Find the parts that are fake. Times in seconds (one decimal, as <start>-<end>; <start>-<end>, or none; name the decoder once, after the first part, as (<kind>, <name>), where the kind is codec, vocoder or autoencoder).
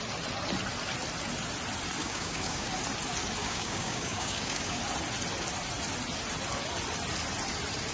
2.0-2.7 (codec, DAC); 3.4-4.8